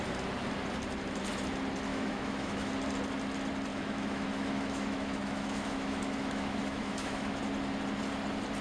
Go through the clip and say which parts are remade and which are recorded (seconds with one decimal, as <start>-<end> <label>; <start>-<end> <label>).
0.0-1.9 recorded; 1.9-2.7 remade; 2.7-3.7 recorded; 3.7-7.4 remade; 7.4-8.6 recorded